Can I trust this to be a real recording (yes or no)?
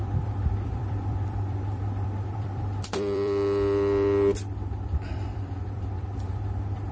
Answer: no